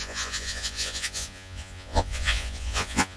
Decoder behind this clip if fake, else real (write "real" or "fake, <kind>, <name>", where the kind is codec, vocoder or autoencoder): fake, vocoder, Vocos